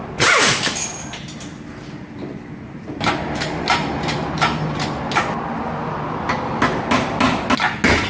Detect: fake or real real